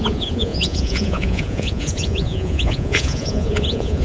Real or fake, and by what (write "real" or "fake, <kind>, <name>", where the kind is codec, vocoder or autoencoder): fake, vocoder, Vocos